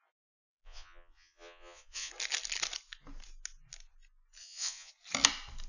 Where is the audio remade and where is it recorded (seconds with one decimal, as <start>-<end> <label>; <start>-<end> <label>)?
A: 0.0-0.5 recorded; 0.5-2.1 remade; 2.1-4.4 recorded; 4.4-4.9 remade; 4.9-5.7 recorded